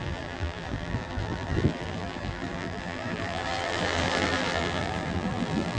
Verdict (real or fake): fake